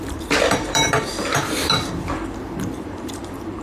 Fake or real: fake